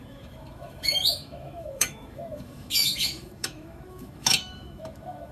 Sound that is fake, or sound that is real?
fake